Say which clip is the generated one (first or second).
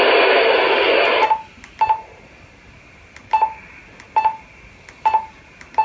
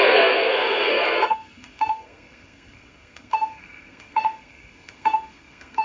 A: second